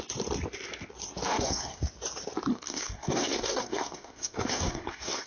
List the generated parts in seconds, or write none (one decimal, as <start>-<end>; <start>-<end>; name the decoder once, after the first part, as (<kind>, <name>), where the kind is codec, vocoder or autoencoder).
1.3-1.8 (codec, SNAC); 2.5-5.3

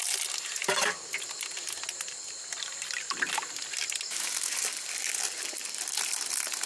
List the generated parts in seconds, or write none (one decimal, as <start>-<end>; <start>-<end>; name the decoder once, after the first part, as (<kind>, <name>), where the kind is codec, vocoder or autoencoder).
none

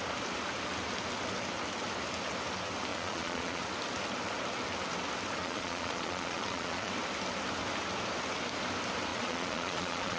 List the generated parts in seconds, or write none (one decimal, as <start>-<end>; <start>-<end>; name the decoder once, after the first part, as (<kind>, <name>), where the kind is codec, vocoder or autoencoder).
2.9-3.6 (vocoder, Vocos); 5.4-6.9; 9.1-10.2

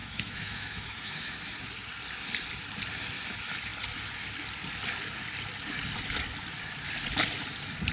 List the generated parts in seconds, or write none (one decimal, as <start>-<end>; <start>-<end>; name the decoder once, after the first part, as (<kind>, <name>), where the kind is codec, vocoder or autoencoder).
0.0-1.6 (autoencoder, DAC-VAE)

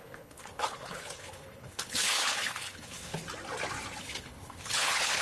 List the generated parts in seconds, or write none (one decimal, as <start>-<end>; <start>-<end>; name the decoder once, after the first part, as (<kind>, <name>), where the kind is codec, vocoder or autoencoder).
0.0-3.2 (codec, HILCodec); 4.0-5.2